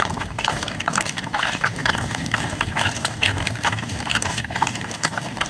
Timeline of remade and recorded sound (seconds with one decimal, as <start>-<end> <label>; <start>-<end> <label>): 0.0-5.5 remade